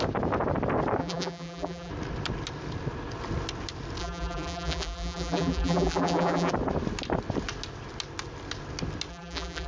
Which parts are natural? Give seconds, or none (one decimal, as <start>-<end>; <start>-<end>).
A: 0.0-1.0; 1.9-4.0; 6.5-9.1